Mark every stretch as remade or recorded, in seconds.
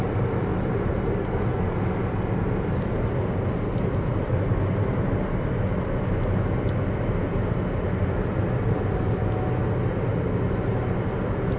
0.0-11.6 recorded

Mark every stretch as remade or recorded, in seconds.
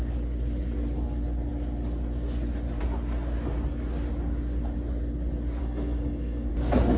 0.0-5.6 recorded; 5.6-6.5 remade; 6.5-7.0 recorded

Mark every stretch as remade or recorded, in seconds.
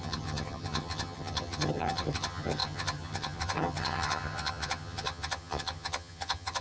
0.0-6.6 remade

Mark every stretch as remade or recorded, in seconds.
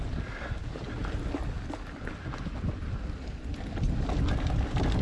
0.0-5.0 recorded